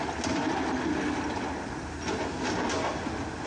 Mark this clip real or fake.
real